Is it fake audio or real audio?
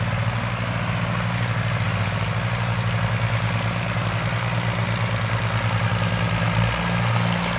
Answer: real